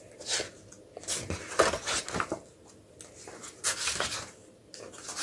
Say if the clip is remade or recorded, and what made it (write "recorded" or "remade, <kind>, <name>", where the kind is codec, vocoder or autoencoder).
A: recorded